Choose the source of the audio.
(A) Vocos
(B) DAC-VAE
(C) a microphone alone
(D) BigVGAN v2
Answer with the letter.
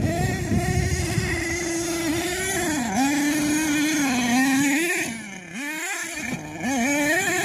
C